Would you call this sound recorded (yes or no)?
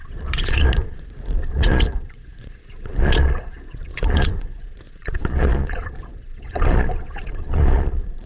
no